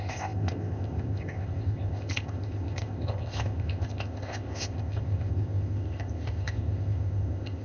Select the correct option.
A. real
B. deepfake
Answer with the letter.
B